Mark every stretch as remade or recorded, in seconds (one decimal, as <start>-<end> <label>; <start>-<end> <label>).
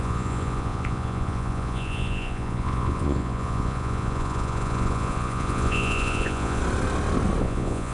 0.0-6.6 remade; 6.6-7.4 recorded; 7.4-7.9 remade